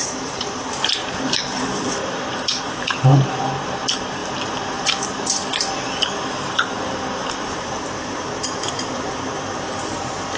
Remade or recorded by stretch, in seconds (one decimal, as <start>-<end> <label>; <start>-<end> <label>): 0.0-10.4 remade